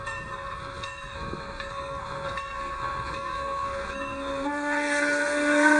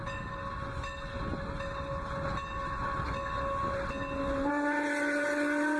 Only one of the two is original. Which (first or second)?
second